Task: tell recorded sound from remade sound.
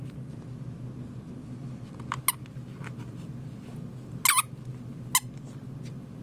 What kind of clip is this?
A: recorded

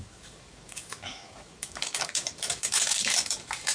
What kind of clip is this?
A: remade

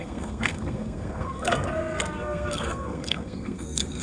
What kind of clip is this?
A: remade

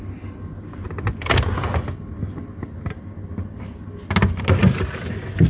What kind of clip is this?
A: recorded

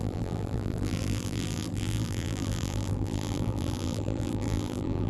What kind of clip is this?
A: remade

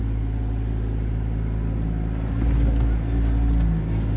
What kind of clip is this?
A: recorded